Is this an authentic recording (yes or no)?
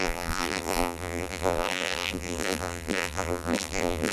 no